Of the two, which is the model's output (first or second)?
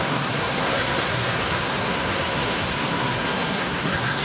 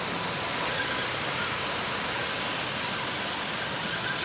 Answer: first